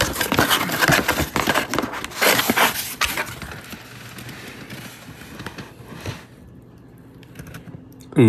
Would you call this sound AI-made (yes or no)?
no